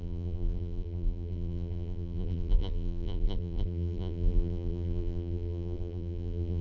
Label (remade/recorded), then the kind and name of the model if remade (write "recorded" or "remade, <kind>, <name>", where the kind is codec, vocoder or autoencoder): remade, vocoder, BigVGAN v2